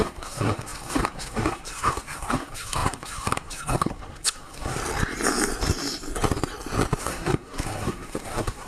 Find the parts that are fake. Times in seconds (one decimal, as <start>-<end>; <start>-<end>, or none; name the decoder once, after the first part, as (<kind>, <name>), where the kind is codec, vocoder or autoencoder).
0.0-4.8 (codec, SNAC); 7.0-8.7